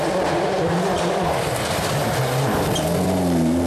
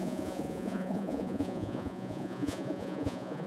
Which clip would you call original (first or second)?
first